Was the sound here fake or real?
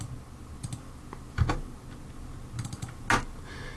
real